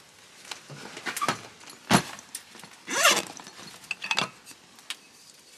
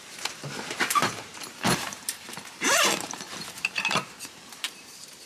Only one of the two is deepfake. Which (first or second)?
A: second